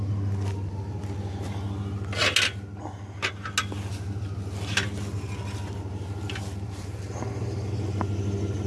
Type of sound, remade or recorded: recorded